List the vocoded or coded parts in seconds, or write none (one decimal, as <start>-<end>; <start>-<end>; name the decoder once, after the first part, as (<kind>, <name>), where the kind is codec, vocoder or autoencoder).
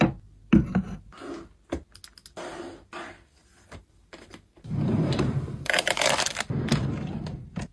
3.4-6.1 (vocoder, BigVGAN v2)